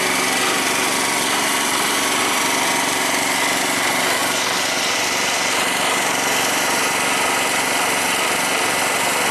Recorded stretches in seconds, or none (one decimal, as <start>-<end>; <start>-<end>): 0.0-9.3